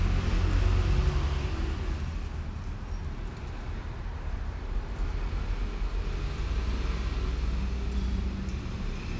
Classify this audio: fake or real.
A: real